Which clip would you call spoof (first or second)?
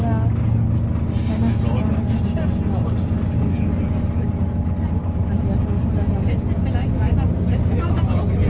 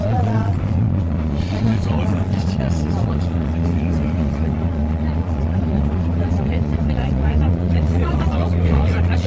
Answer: second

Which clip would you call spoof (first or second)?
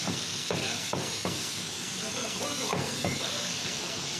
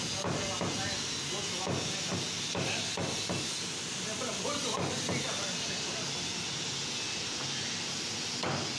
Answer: first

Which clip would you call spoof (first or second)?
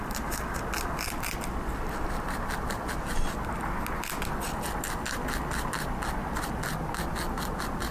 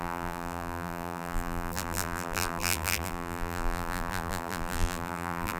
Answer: second